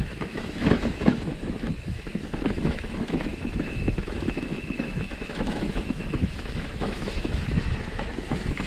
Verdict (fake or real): fake